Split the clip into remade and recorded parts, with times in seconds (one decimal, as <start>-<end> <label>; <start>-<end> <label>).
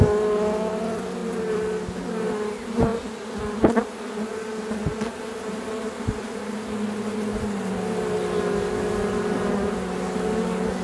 0.0-10.8 recorded